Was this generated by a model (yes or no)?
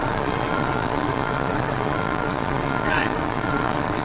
yes